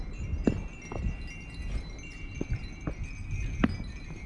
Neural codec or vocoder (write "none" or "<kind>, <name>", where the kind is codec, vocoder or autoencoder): none